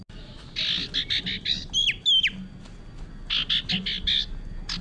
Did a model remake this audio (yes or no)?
no